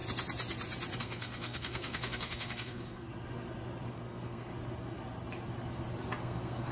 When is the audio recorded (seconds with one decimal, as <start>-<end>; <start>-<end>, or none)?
0.0-1.0; 3.1-3.9; 4.5-6.2